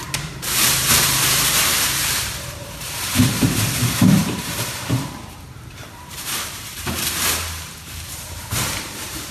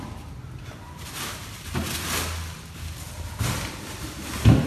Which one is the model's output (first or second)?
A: first